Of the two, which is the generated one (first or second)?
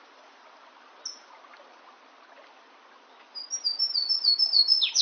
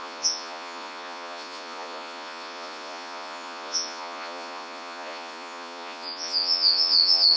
second